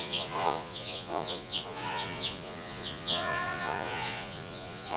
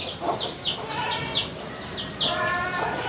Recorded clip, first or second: second